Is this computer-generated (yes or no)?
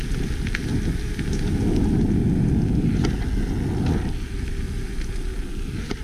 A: no